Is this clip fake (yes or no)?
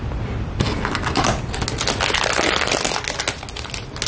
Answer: no